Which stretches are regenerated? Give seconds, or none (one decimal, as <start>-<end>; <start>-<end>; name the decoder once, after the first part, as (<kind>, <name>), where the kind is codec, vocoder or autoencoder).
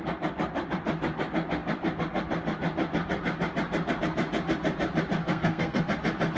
5.2-5.8 (codec, SNAC)